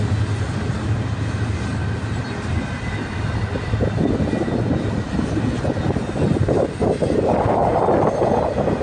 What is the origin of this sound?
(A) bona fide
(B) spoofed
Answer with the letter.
A